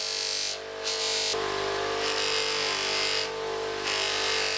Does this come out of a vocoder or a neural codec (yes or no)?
no